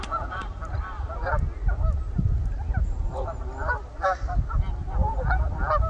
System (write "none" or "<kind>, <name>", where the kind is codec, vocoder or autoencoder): none